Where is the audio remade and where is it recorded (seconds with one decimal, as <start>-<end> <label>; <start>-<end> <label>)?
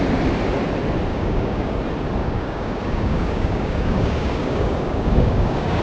0.0-1.1 recorded; 1.1-1.8 remade; 1.8-2.2 recorded; 2.2-5.8 remade